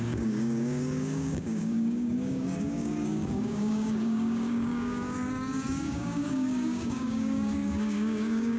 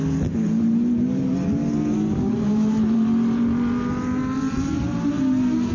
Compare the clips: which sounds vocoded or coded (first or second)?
first